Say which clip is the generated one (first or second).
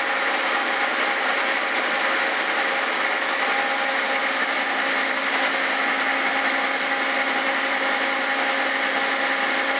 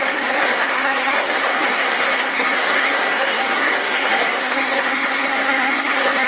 second